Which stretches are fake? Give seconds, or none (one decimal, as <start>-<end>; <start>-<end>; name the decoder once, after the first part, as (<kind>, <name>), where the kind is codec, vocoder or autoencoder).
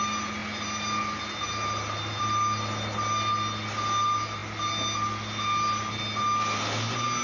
none